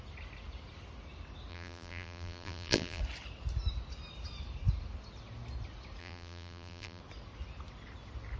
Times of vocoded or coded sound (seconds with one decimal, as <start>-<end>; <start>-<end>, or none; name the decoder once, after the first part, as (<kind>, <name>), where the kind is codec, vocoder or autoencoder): 1.5-3.0 (vocoder, BigVGAN v2); 6.0-7.0